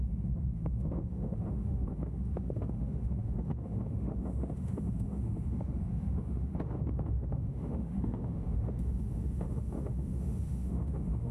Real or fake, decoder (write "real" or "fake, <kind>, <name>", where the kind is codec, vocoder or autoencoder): fake, autoencoder, DAC-VAE